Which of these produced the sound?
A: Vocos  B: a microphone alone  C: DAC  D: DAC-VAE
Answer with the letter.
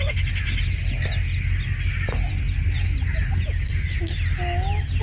B